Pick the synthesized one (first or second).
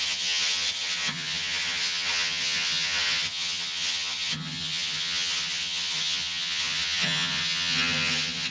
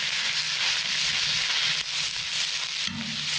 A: first